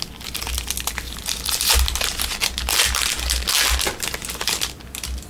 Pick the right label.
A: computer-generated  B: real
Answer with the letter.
B